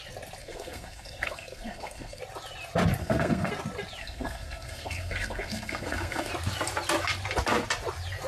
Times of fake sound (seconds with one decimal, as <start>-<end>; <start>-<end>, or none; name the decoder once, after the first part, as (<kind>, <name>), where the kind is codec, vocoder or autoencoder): 0.4-2.2 (codec, SNAC); 3.0-3.5; 4.0-6.3